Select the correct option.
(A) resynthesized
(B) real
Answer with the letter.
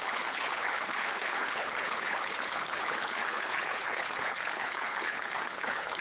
A